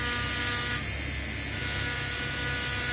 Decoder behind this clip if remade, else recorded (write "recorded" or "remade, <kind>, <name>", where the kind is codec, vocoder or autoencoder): recorded